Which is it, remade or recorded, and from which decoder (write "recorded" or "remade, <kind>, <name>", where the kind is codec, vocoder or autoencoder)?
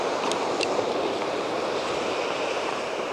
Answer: remade, vocoder, BigVGAN v2